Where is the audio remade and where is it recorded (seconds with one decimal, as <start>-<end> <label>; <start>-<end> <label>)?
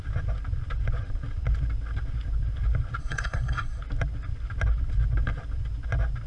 0.0-3.0 recorded; 3.0-3.8 remade; 3.8-6.3 recorded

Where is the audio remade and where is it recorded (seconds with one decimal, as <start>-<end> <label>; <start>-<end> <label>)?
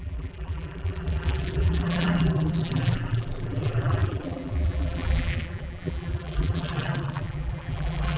0.0-8.2 remade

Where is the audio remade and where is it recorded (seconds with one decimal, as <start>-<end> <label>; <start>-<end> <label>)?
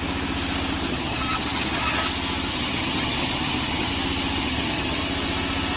0.0-0.9 recorded; 0.9-2.0 remade; 2.0-2.5 recorded; 2.5-3.9 remade; 3.9-4.4 recorded; 4.4-5.0 remade; 5.0-5.8 recorded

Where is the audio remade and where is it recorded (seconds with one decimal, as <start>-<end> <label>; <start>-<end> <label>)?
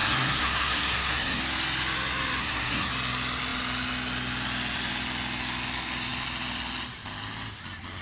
0.0-1.4 remade; 1.4-2.4 recorded; 2.4-2.9 remade; 2.9-8.0 recorded